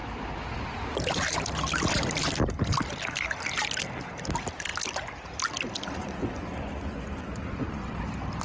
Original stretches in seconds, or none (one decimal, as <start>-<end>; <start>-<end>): 0.0-6.0; 8.0-8.4